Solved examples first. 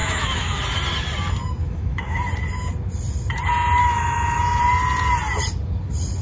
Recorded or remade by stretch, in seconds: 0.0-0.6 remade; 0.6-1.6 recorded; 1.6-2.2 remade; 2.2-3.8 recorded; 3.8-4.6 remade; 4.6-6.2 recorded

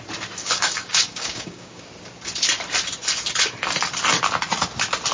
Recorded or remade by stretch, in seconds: 0.0-0.4 recorded; 0.4-1.8 remade; 1.8-5.1 recorded

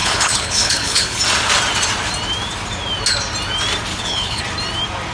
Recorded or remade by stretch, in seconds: 0.0-1.2 remade; 1.2-3.9 recorded; 3.9-4.4 remade; 4.4-5.1 recorded

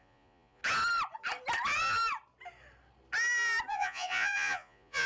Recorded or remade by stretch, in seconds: 0.0-0.6 remade; 0.6-3.7 recorded; 3.7-5.1 remade

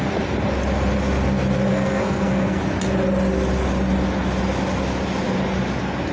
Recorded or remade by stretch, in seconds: 0.0-1.7 recorded; 1.7-2.6 remade; 2.6-6.1 recorded